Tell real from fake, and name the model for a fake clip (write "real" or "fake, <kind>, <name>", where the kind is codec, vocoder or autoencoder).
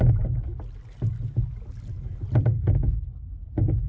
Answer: real